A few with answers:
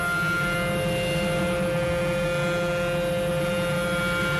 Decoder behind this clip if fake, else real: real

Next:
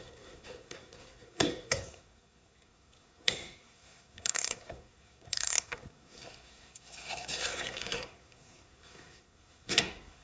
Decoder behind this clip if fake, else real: fake, codec, SNAC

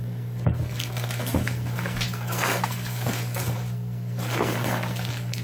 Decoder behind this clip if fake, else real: fake, codec, SNAC